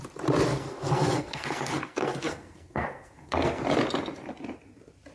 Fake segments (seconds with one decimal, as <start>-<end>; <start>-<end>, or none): 0.5-3.6